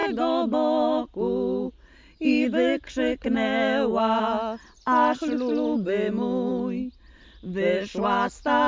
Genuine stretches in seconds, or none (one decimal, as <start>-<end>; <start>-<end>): 0.0-8.7